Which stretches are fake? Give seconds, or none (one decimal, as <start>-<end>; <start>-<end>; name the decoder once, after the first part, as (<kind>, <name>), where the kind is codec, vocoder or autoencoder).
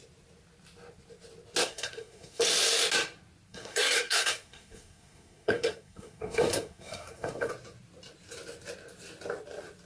1.6-2.4 (codec, SNAC); 3.5-7.5